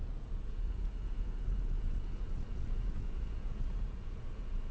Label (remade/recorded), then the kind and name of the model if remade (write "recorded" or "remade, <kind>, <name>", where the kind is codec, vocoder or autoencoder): remade, vocoder, Vocos